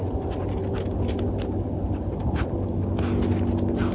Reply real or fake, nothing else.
real